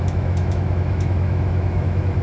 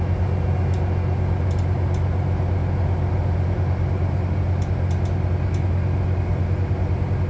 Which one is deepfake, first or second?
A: first